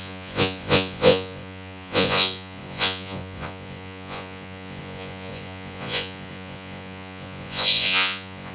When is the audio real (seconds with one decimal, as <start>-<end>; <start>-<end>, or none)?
none

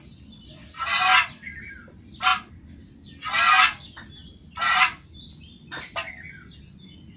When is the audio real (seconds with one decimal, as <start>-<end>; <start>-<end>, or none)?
0.0-7.2

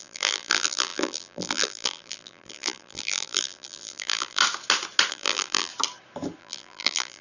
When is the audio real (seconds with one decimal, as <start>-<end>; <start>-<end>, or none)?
4.4-5.1; 5.7-6.4

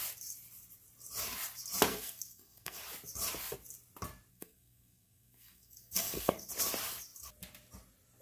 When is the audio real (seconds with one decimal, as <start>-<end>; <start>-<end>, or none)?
0.0-1.9; 2.8-4.3; 6.5-8.2

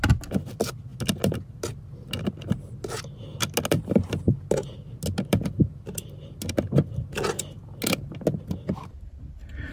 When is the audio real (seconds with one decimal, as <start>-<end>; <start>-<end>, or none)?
0.0-9.7

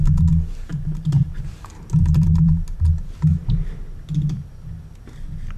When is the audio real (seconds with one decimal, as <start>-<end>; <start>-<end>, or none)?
0.0-0.7; 1.7-5.6